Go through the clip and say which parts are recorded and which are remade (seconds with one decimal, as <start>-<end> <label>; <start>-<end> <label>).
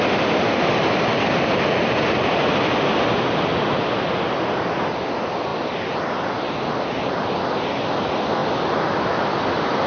0.0-9.9 recorded